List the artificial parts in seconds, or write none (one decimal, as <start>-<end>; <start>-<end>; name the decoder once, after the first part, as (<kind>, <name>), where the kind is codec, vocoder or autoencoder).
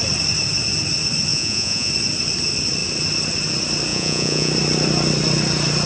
1.3-1.9 (vocoder, Vocos); 3.9-4.5